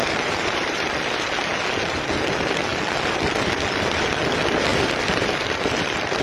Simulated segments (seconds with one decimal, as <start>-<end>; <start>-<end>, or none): 0.0-1.6; 2.7-4.0; 4.7-6.2